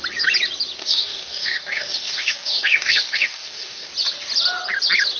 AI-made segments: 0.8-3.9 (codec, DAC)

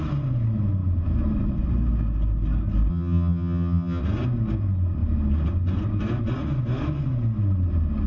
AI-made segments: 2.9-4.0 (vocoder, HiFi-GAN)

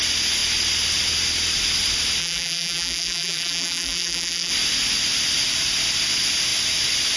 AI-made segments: 2.2-4.5 (vocoder, BigVGAN v2)

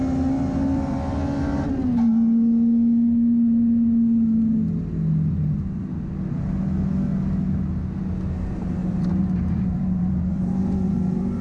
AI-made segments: 8.8-11.4 (vocoder, BigVGAN v2)

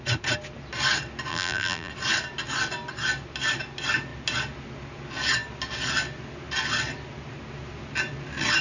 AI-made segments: 1.3-1.9 (vocoder, BigVGAN v2)

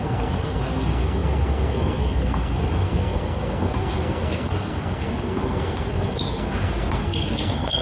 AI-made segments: 0.0-7.8 (codec, SNAC)

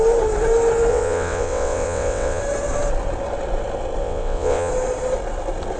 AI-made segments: 0.9-2.4 (vocoder, WaveNeXt); 4.0-4.7

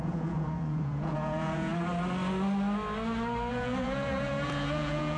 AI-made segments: 0.0-1.7 (vocoder, Vocos); 3.5-5.2